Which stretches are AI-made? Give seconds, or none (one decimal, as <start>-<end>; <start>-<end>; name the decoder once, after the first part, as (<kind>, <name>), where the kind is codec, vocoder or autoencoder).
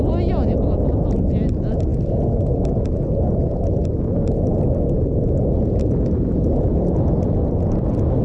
none